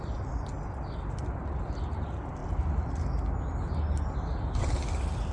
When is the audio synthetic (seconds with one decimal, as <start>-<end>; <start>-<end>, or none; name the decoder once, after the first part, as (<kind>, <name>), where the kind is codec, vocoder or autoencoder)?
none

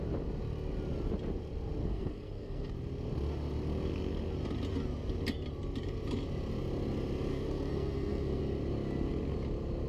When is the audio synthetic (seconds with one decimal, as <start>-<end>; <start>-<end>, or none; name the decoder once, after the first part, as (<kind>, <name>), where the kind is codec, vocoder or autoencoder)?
1.8-2.7 (codec, SNAC); 7.3-8.4

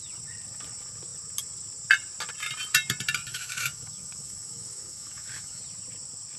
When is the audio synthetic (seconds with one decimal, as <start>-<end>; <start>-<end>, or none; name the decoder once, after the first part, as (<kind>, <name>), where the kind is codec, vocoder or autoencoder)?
3.3-5.6 (autoencoder, DAC-VAE)

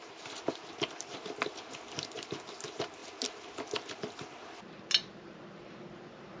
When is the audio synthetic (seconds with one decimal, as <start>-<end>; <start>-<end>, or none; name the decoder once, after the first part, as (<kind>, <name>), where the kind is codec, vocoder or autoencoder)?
none